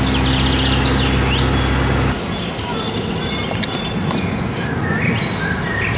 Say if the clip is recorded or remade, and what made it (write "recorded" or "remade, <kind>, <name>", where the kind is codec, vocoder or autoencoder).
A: recorded